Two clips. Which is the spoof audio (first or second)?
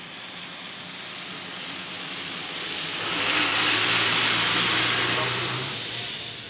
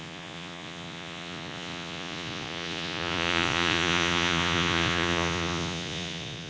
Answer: second